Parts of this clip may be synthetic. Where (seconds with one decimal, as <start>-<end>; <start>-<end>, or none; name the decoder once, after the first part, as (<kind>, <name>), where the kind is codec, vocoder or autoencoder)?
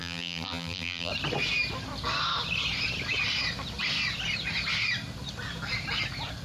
0.0-1.1 (vocoder, BigVGAN v2)